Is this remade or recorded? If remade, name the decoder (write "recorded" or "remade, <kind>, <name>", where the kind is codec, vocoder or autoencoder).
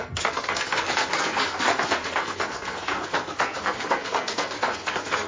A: remade, codec, SNAC